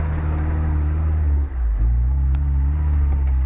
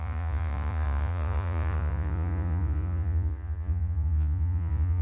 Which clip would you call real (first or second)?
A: first